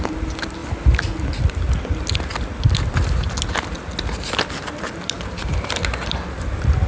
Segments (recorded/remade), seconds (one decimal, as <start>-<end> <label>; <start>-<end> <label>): 0.0-6.9 recorded